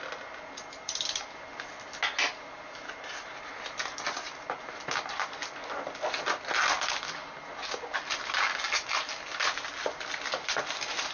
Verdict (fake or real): real